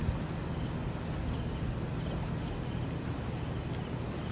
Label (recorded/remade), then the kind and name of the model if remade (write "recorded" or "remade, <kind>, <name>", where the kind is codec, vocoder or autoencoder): recorded